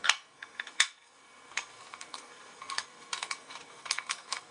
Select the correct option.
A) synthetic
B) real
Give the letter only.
A